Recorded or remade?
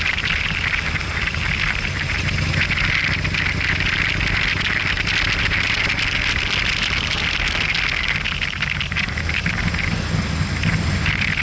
recorded